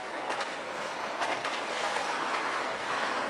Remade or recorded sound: remade